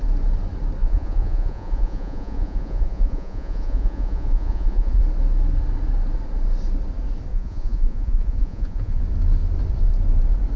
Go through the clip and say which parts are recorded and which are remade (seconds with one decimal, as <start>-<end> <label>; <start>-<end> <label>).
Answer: 0.0-0.8 recorded; 0.8-5.0 remade; 5.0-7.3 recorded; 7.3-9.0 remade; 9.0-10.6 recorded